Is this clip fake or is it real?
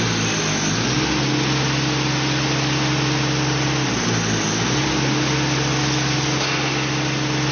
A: real